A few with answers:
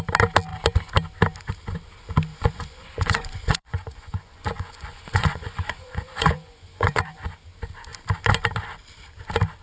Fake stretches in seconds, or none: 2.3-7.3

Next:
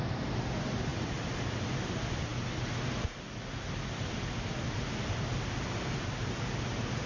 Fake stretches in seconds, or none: none

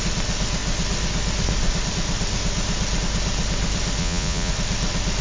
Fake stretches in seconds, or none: 4.0-4.5